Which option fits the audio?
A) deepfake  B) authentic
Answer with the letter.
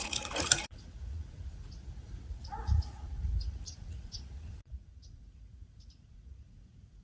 A